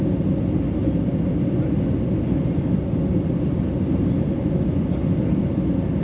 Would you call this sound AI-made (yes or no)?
no